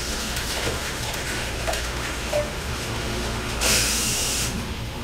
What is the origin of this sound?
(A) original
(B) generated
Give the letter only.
B